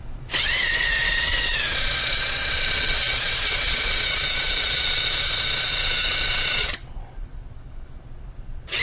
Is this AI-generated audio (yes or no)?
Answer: yes